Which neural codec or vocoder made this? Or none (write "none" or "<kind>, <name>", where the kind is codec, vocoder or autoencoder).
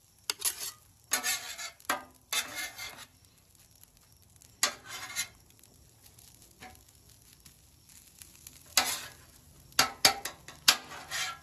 none